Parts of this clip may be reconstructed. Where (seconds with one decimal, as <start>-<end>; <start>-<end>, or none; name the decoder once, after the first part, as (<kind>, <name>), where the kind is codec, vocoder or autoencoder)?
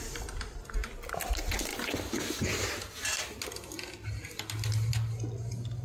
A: none